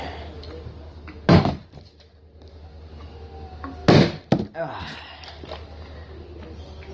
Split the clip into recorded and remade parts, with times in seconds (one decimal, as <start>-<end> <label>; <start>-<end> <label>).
0.0-6.9 recorded